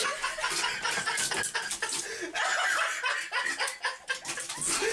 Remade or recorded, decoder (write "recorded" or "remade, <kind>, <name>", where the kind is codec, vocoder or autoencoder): recorded